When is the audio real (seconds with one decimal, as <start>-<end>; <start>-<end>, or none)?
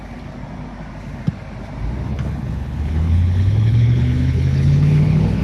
0.0-2.1